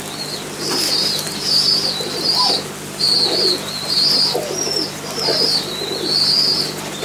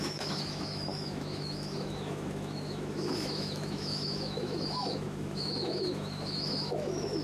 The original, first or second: first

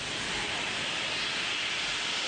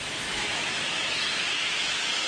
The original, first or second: first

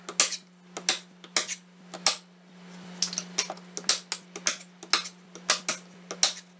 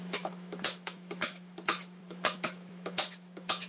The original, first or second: first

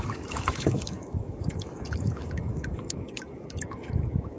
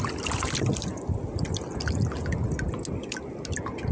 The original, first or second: second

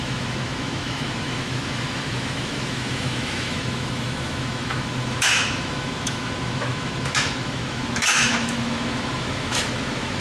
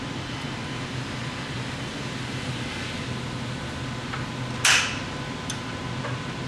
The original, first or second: second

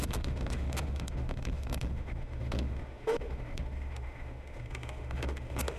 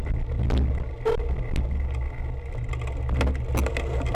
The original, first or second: second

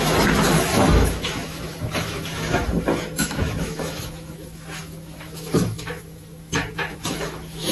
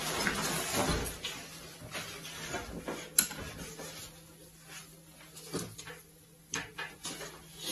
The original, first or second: second